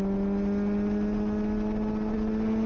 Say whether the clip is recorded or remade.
recorded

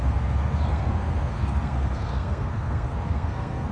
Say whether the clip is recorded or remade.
remade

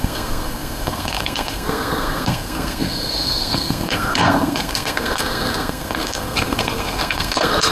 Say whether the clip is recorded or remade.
remade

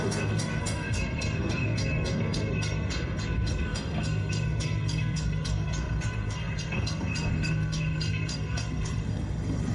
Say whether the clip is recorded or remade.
remade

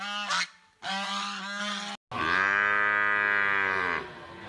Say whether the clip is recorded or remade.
recorded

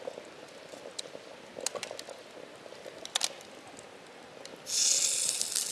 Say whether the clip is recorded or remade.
recorded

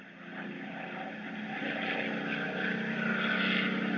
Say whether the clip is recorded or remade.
recorded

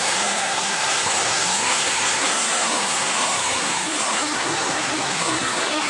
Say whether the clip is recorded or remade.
remade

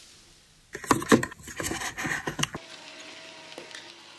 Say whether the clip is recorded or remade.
recorded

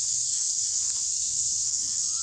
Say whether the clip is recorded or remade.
remade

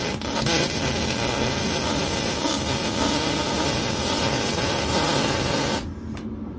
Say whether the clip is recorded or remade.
recorded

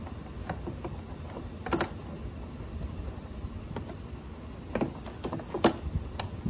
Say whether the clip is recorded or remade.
recorded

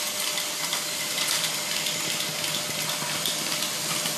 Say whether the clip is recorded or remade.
recorded